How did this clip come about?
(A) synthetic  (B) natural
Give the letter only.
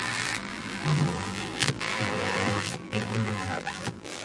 A